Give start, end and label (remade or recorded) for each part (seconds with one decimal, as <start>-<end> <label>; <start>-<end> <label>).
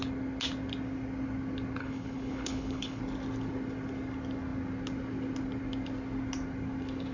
0.0-1.8 recorded; 1.8-3.0 remade; 3.0-7.1 recorded